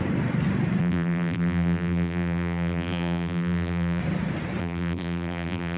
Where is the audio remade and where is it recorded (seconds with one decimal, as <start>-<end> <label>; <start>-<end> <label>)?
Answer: 0.0-0.8 recorded; 0.8-4.0 remade; 4.0-4.6 recorded; 4.6-5.8 remade